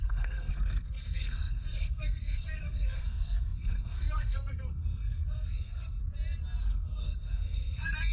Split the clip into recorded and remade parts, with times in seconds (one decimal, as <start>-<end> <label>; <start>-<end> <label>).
0.0-6.0 remade; 6.0-6.6 recorded; 6.6-8.1 remade